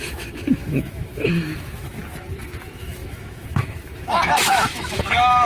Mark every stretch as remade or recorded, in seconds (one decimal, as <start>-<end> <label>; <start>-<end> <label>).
0.0-2.0 remade; 2.0-2.6 recorded; 2.6-5.5 remade